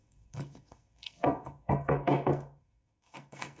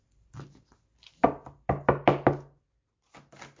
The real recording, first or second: second